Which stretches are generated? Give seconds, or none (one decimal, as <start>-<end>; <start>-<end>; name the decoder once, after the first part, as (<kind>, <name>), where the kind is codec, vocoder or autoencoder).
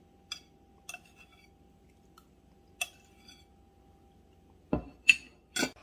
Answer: none